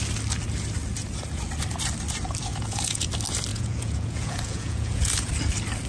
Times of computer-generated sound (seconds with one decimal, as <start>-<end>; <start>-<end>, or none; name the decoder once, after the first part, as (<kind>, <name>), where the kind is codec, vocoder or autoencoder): 2.5-3.1 (vocoder, Vocos); 3.5-5.3

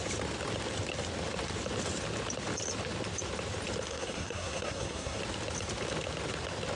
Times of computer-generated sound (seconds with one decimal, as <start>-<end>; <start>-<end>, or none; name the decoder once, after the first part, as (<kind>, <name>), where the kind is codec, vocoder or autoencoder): 3.9-5.2 (codec, SNAC)

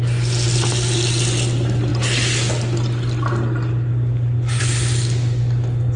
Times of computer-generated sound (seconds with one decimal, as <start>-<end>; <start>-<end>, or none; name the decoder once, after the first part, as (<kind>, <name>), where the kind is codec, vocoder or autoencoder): none

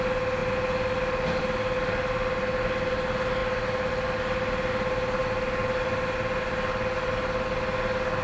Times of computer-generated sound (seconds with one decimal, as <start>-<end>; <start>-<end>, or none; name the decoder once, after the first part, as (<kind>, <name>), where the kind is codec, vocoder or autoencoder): none